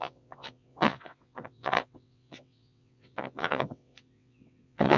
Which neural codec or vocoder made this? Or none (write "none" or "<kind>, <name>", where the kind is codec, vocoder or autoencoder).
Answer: vocoder, WaveNeXt